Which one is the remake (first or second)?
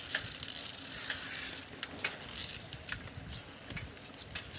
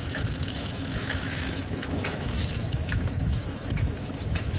second